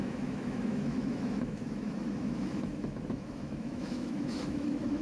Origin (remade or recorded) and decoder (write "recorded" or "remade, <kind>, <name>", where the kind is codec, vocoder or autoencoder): remade, autoencoder, DAC-VAE